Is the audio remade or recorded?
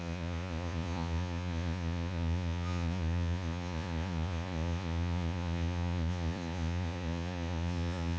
remade